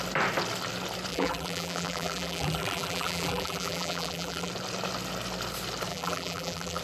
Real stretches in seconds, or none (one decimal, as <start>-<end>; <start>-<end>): 0.0-1.1; 4.5-5.9